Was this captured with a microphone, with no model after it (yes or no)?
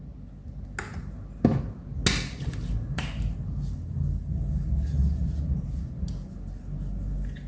yes